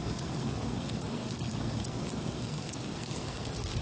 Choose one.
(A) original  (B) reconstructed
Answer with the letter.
B